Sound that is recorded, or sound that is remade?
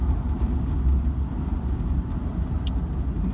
recorded